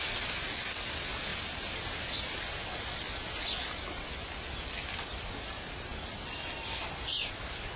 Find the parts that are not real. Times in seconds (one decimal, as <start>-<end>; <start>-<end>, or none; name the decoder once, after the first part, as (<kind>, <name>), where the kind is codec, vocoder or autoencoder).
none